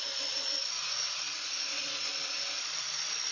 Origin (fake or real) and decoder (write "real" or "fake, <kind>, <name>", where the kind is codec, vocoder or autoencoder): fake, vocoder, Vocos